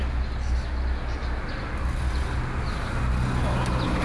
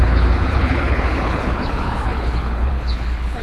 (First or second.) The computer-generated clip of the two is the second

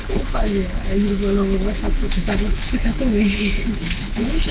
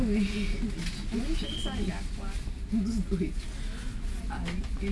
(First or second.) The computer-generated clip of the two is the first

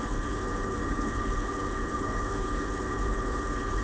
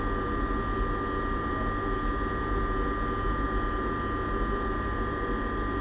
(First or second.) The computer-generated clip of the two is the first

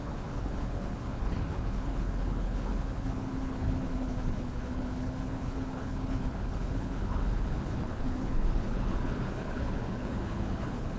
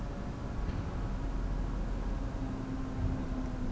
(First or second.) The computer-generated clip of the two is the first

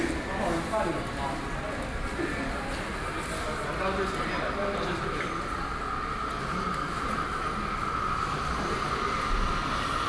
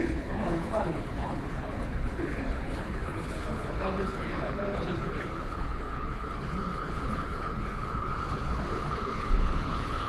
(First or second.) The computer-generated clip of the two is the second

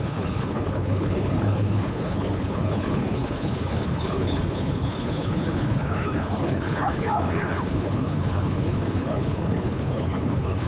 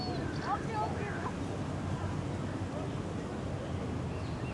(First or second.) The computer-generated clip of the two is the first